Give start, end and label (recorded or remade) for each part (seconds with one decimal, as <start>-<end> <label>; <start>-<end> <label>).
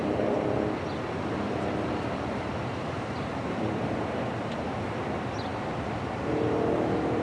0.0-7.2 remade